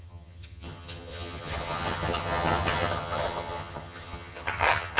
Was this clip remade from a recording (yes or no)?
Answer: yes